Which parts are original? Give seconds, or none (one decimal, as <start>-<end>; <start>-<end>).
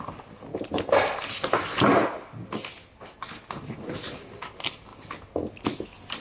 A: 0.0-6.2